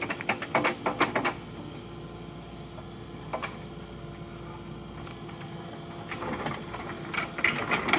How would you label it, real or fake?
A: real